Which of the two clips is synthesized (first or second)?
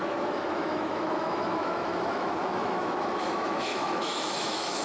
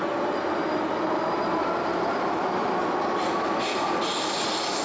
first